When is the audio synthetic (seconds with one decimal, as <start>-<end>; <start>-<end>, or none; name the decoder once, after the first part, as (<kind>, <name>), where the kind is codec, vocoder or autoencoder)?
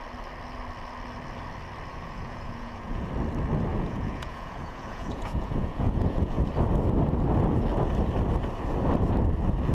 1.9-3.1 (vocoder, Vocos); 3.7-6.5